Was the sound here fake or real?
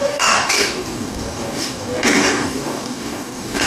fake